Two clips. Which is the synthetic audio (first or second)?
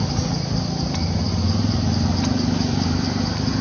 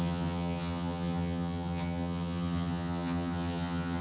second